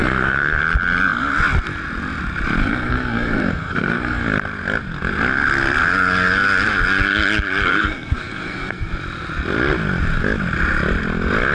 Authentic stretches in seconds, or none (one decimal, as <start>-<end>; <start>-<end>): 0.6-2.6; 4.2-7.7; 8.9-11.5